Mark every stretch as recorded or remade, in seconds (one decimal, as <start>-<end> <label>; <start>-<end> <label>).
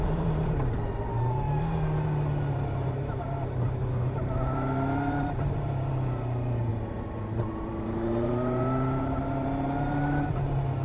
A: 0.0-6.7 remade; 6.7-7.6 recorded; 7.6-10.8 remade